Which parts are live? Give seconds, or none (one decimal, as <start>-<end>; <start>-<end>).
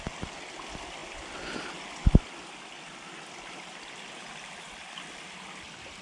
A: 0.0-6.0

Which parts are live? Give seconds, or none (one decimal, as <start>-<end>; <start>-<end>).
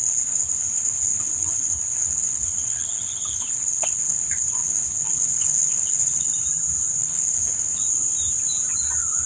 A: 6.3-7.0; 7.8-9.3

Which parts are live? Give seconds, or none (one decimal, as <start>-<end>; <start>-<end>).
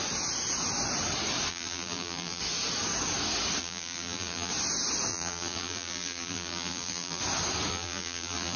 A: 0.0-1.5; 2.4-3.6; 4.5-5.1; 7.2-7.7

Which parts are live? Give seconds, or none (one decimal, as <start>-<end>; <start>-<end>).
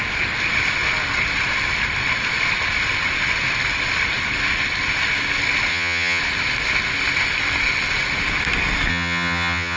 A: 0.0-5.7; 6.2-8.9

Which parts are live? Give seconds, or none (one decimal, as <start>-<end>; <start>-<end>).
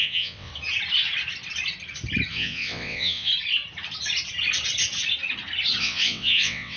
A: 0.5-2.3; 3.3-5.8